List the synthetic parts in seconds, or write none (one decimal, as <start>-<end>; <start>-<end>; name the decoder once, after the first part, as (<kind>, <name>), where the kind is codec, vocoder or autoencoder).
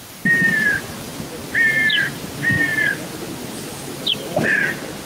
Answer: none